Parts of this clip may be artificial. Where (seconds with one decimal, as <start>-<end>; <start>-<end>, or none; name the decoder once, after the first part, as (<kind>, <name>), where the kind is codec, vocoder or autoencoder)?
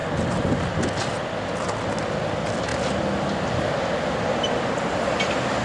none